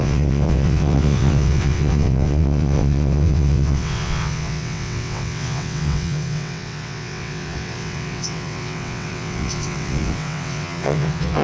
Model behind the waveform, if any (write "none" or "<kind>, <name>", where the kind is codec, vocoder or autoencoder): vocoder, WaveNeXt